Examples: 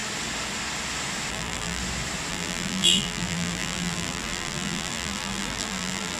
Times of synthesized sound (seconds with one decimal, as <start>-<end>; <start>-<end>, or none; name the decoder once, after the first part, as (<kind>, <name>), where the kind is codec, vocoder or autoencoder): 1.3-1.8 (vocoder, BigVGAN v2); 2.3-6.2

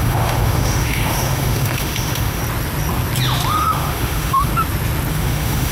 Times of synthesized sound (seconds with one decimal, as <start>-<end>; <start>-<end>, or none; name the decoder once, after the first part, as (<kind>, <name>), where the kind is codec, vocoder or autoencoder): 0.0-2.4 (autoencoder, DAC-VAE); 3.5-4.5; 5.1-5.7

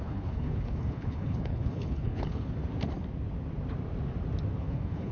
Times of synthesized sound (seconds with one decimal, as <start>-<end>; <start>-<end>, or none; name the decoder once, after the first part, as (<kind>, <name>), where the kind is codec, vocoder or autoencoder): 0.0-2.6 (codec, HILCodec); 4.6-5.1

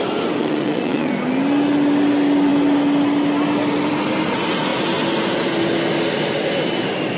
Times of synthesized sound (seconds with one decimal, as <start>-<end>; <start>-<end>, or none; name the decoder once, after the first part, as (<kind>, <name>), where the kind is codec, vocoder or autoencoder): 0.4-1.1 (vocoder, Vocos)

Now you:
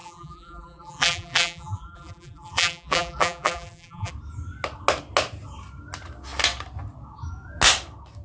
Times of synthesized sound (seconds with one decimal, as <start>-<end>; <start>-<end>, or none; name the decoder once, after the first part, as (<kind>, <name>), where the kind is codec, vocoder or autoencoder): 0.0-4.1 (vocoder, BigVGAN v2)